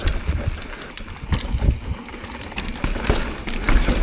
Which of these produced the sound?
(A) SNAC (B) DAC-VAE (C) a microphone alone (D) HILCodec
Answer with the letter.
C